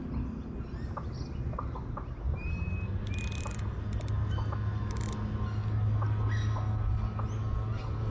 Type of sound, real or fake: real